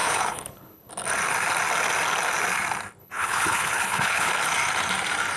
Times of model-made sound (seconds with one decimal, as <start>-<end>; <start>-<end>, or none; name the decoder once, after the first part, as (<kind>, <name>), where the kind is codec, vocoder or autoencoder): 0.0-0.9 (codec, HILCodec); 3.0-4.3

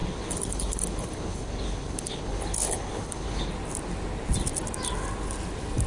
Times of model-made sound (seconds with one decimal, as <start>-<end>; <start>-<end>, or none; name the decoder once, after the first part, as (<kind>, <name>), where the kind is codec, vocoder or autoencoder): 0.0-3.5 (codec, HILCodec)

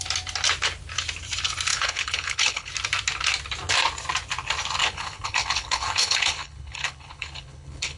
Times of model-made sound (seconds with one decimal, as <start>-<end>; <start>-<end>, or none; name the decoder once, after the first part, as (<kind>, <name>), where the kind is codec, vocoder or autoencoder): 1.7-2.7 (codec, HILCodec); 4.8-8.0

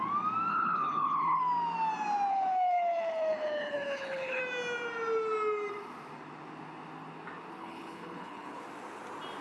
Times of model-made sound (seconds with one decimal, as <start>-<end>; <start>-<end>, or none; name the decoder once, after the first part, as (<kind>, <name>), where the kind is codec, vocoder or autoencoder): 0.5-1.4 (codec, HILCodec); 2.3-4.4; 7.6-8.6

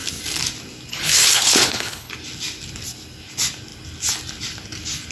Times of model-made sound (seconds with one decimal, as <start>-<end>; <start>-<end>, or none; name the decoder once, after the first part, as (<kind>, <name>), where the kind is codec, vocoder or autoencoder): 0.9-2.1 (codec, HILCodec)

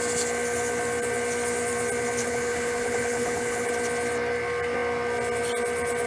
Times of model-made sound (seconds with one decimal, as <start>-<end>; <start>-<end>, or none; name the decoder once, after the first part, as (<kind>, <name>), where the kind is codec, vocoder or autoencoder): 2.2-3.7 (codec, HILCodec)